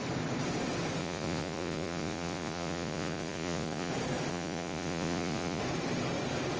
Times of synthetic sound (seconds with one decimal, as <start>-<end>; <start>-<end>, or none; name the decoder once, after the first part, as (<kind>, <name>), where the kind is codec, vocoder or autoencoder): 1.0-3.9 (vocoder, Vocos); 4.3-5.6